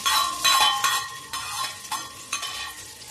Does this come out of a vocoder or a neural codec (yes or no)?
yes